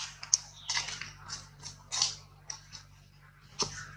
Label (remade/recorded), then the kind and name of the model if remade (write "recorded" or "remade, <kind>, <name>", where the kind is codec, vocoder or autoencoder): recorded